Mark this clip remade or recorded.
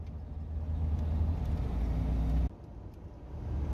recorded